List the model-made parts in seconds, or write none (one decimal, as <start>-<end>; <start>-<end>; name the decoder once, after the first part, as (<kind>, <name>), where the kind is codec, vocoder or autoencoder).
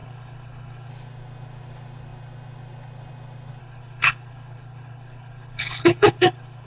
0.0-0.9 (codec, HILCodec); 3.6-6.7